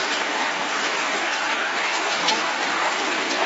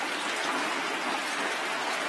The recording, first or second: second